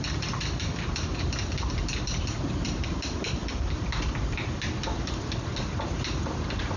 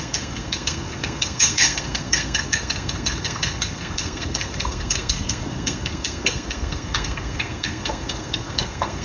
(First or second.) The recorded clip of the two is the first